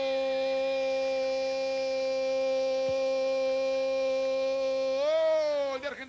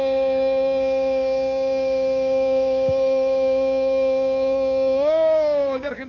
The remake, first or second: second